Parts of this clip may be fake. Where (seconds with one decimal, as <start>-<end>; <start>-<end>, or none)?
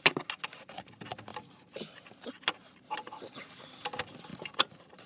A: 4.3-5.1